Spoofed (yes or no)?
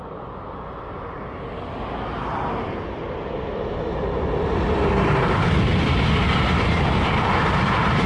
no